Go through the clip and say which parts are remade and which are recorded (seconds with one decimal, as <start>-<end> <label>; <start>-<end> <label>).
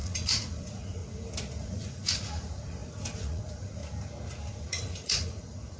0.0-1.0 remade; 1.0-1.6 recorded; 1.6-3.8 remade; 3.8-4.5 recorded; 4.5-5.8 remade